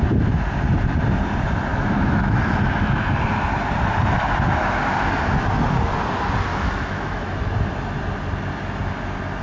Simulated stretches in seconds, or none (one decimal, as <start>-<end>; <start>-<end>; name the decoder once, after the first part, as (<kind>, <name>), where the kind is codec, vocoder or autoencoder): 1.7-3.0 (autoencoder, DAC-VAE); 6.5-7.5